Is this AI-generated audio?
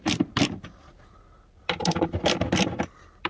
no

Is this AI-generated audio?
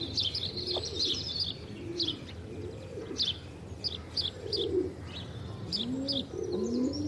no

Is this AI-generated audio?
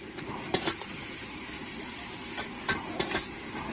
no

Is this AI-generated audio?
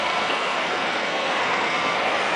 yes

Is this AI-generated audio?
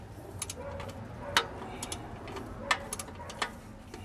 no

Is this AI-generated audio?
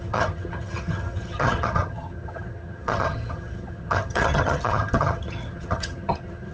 yes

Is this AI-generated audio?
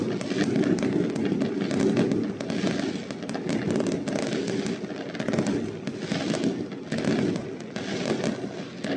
no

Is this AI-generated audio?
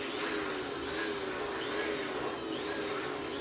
no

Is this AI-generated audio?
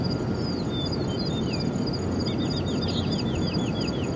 no